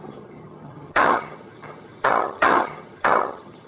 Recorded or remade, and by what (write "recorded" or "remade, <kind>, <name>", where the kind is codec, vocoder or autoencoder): remade, vocoder, HiFi-GAN